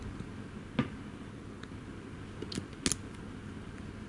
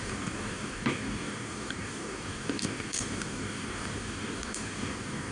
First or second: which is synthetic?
second